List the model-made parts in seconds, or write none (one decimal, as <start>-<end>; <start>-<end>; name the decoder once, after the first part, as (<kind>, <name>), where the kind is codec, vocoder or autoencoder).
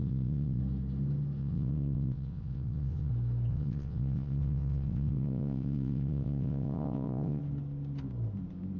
0.0-0.6 (vocoder, WaveNeXt); 1.4-3.1; 3.5-7.4